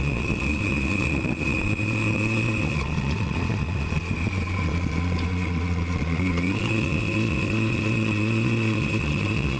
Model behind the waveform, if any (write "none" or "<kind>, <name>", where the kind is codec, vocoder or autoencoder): vocoder, Vocos